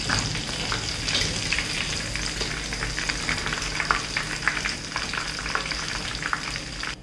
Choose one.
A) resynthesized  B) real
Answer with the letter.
B